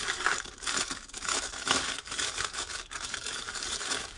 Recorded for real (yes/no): no